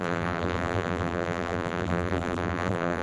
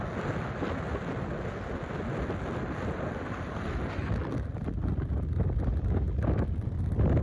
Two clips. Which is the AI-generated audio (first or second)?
first